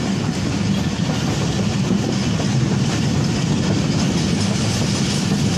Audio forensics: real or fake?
real